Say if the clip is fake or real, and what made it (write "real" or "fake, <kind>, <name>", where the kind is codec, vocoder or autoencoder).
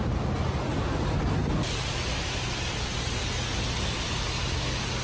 real